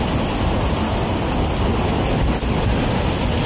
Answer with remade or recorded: recorded